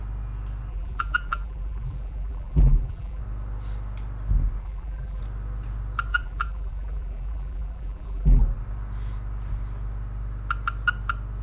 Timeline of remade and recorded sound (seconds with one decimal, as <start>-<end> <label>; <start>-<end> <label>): 0.0-0.7 recorded; 0.7-3.2 remade; 3.2-4.6 recorded; 4.6-5.2 remade; 5.2-6.1 recorded; 6.1-8.4 remade; 8.4-11.4 recorded